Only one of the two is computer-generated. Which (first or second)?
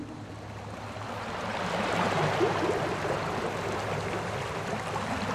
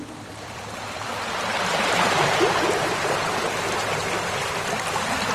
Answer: second